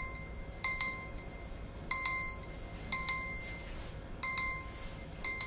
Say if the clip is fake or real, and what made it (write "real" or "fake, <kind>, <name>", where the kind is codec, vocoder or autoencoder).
real